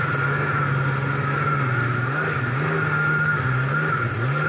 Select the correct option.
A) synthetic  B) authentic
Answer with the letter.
B